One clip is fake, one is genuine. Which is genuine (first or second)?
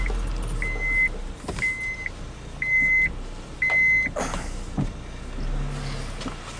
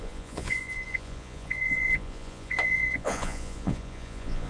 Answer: first